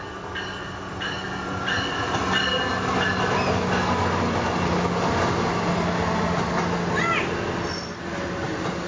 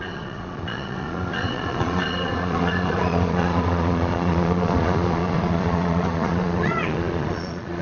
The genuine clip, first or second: first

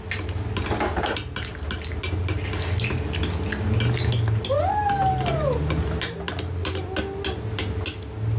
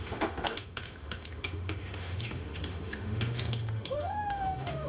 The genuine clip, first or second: first